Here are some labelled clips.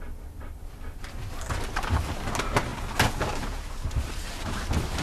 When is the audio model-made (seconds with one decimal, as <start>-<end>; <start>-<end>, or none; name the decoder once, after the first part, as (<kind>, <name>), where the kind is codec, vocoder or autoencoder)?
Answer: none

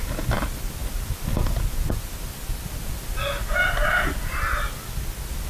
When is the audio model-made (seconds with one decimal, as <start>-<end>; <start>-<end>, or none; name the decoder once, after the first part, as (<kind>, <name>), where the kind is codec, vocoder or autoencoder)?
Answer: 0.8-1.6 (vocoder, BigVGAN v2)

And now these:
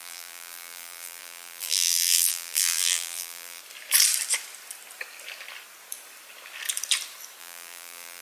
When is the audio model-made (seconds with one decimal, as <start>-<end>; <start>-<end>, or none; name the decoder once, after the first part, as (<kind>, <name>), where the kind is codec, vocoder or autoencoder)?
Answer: 0.0-3.6 (vocoder, BigVGAN v2); 7.4-8.2

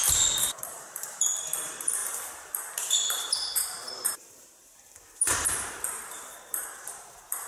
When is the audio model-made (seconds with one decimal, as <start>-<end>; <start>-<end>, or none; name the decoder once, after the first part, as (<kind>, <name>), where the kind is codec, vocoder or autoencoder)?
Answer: 0.0-7.5 (vocoder, BigVGAN v2)

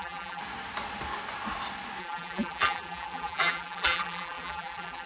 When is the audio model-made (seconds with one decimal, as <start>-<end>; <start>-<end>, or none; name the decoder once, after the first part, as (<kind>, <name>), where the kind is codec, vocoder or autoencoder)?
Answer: 0.0-0.4 (vocoder, BigVGAN v2); 2.0-5.1

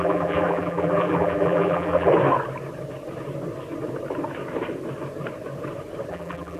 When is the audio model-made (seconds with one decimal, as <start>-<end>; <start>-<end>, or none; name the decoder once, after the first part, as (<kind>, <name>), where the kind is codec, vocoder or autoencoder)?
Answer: 0.0-2.1 (vocoder, BigVGAN v2); 6.1-6.6